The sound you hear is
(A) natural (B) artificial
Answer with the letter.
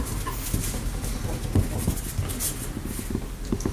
A